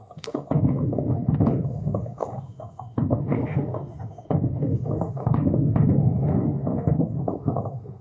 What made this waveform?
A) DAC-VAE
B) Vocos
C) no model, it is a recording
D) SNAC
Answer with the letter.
A